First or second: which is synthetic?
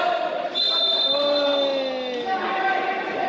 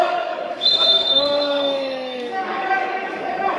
second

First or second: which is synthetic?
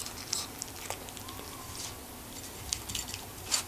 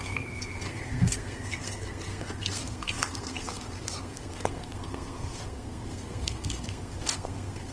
second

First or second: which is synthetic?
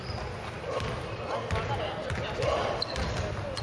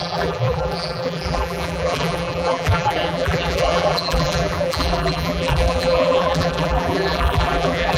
second